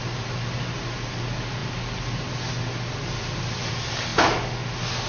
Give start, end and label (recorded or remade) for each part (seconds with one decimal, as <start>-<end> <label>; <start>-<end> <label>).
0.0-5.1 recorded